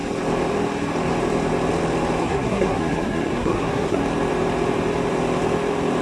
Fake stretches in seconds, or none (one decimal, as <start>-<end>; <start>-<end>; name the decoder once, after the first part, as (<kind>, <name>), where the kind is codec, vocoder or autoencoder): 2.2-4.0 (codec, SNAC)

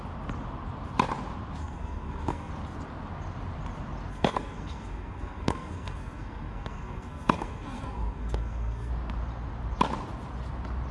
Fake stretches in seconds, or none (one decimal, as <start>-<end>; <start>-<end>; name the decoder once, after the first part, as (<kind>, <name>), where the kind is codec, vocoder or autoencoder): 1.6-2.5 (codec, SNAC); 4.1-8.9